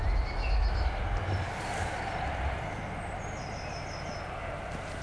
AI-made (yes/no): no